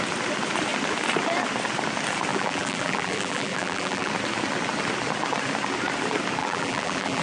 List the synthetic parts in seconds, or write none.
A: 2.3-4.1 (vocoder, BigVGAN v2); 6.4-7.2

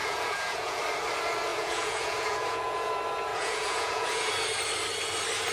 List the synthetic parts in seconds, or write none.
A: 0.0-0.8 (vocoder, Vocos); 1.5-2.9; 3.3-4.3

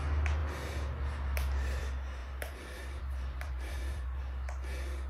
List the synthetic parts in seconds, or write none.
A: 2.2-4.2 (vocoder, BigVGAN v2)

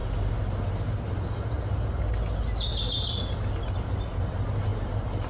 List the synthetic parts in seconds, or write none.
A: none

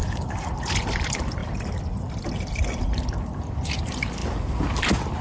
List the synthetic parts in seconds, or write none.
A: 0.0-0.5 (codec, DAC)

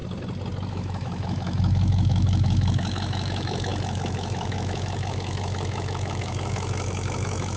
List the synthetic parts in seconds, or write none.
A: 0.7-7.6 (autoencoder, DAC-VAE)

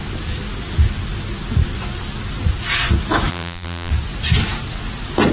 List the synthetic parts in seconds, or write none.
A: 3.3-3.9 (vocoder, BigVGAN v2)

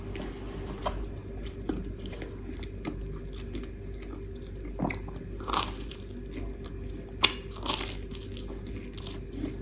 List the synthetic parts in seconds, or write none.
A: none